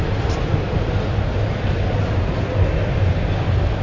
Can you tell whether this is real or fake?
real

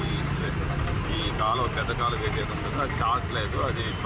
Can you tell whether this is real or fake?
fake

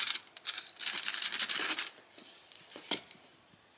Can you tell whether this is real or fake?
fake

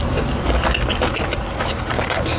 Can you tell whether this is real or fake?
real